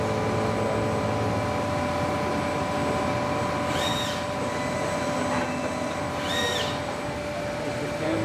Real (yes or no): yes